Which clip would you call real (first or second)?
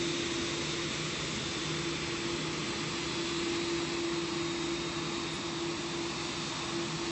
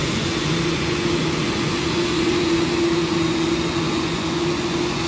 first